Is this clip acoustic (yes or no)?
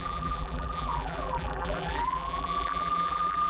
no